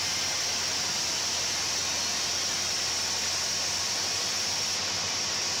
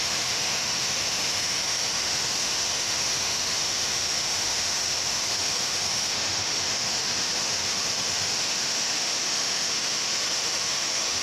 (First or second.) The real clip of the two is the first